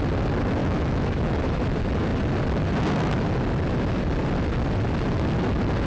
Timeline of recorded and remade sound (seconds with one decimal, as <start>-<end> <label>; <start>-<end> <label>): 0.0-0.6 recorded; 0.6-1.6 remade; 1.6-5.9 recorded